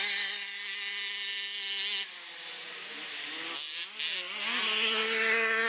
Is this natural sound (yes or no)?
yes